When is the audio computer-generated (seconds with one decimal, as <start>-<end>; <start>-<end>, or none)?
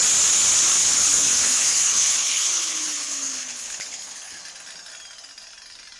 0.8-4.4